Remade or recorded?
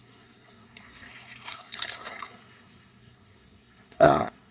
remade